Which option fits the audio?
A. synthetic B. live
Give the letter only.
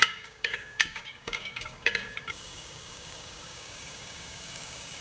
A